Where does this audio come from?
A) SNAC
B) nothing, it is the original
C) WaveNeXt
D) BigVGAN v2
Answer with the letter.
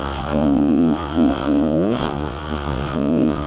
C